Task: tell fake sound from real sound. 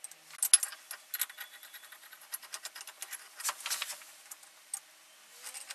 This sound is real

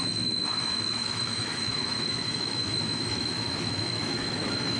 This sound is fake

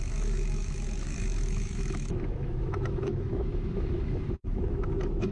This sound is fake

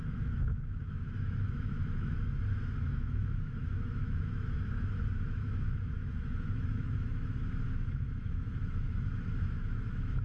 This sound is fake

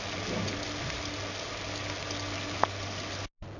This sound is real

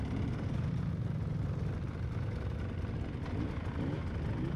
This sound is real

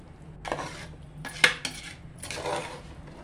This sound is real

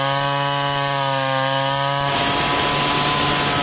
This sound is real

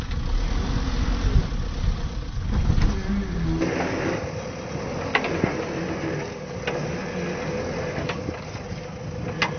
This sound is real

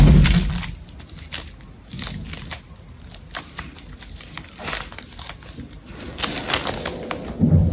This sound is real